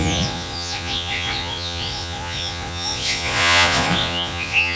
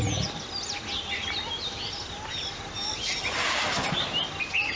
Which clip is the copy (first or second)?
first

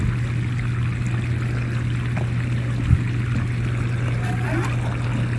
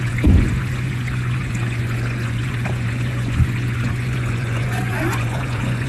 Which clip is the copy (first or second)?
second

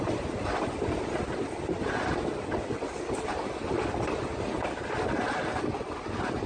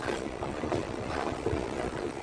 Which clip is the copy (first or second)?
second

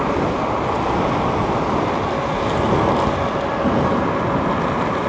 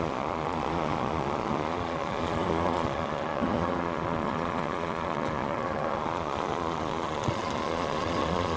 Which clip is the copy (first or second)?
second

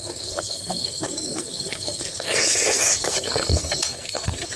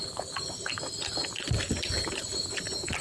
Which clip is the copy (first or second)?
first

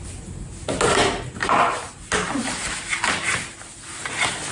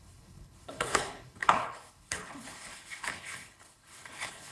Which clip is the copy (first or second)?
second